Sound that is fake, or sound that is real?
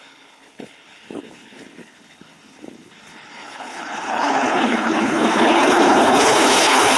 fake